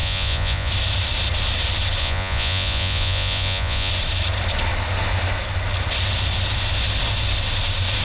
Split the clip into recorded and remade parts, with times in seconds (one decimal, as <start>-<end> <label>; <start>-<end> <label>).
0.0-0.7 remade; 0.7-2.0 recorded; 2.0-3.9 remade; 3.9-8.0 recorded